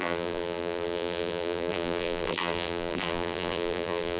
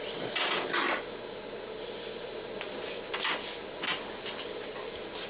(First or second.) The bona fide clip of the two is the second